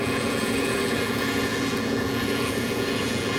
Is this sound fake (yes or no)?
yes